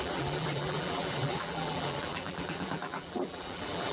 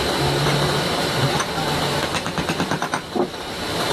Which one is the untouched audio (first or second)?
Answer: second